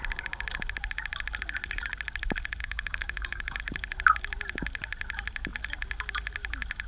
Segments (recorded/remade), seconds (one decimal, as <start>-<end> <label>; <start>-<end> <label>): 0.0-2.6 recorded; 2.6-3.6 remade; 3.6-6.9 recorded